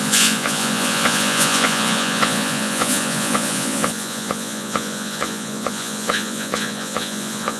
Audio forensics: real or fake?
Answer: fake